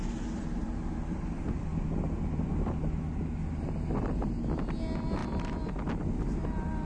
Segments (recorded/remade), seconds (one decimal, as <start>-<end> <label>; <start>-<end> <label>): 0.0-6.9 recorded